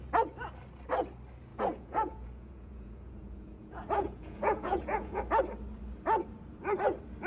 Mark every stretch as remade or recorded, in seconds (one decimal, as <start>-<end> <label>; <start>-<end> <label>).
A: 0.0-1.5 recorded; 1.5-5.2 remade; 5.2-7.3 recorded

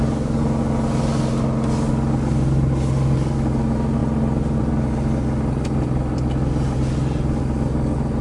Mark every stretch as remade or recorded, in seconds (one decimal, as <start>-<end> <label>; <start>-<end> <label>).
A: 0.0-8.2 recorded

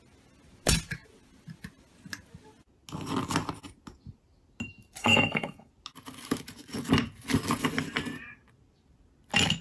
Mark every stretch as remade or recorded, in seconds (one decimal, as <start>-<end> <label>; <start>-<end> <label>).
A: 0.0-5.0 recorded; 5.0-5.7 remade; 5.7-9.6 recorded

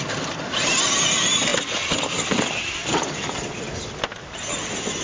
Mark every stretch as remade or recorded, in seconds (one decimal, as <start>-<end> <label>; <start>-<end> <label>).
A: 0.0-5.0 recorded

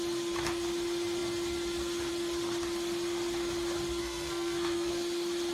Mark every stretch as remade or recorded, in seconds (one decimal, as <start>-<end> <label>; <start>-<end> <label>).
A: 0.0-4.0 recorded; 4.0-4.9 remade; 4.9-5.5 recorded

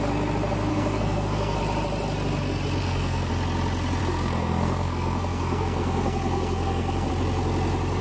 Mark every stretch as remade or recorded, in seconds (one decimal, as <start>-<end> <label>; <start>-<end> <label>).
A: 0.0-0.7 recorded; 0.7-1.6 remade; 1.6-2.8 recorded; 2.8-3.3 remade; 3.3-4.0 recorded; 4.0-7.1 remade; 7.1-8.0 recorded

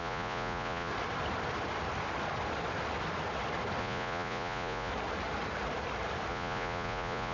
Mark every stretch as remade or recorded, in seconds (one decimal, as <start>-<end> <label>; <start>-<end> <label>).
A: 0.0-0.9 remade; 0.9-3.8 recorded; 3.8-4.9 remade; 4.9-6.3 recorded; 6.3-7.3 remade

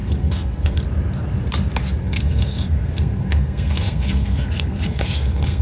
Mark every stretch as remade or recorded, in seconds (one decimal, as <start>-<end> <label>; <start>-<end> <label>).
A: 0.0-0.8 remade; 0.8-2.0 recorded; 2.0-5.6 remade